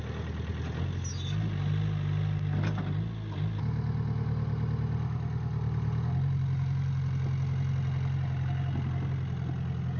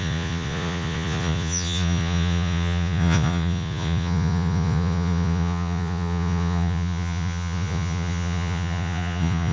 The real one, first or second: first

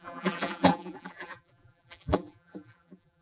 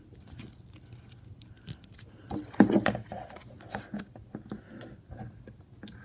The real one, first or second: second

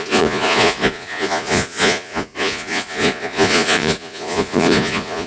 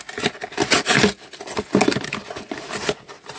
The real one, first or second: second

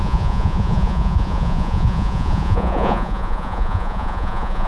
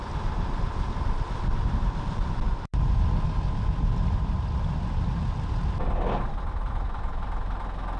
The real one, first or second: second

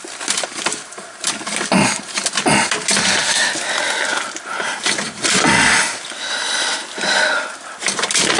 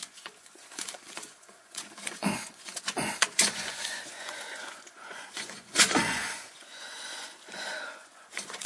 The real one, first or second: first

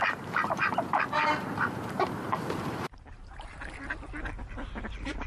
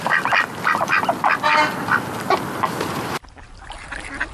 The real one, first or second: second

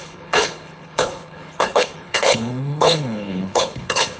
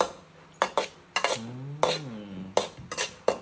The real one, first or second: second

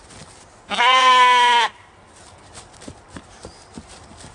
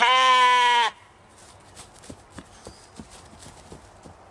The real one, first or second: second